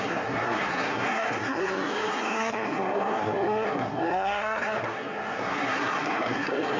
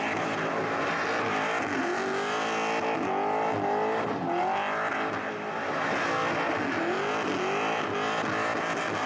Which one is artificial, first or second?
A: first